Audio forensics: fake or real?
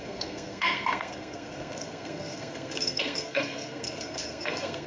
fake